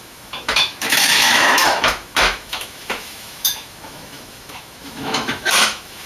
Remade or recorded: remade